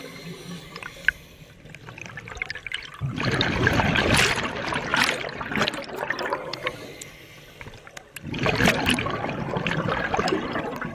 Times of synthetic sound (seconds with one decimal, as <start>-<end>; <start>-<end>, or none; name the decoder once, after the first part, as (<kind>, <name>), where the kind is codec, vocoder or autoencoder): 0.0-4.9 (vocoder, BigVGAN v2); 8.6-10.9